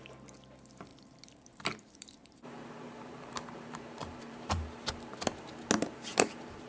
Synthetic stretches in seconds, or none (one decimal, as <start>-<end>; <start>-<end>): 0.9-4.9; 6.1-6.7